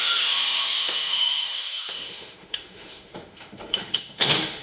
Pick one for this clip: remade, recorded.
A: remade